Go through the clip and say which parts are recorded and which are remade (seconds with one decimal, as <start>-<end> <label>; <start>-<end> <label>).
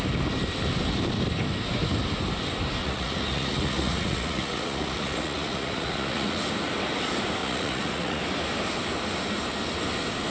0.0-2.8 recorded; 2.8-6.4 remade; 6.4-7.4 recorded; 7.4-8.2 remade; 8.2-10.3 recorded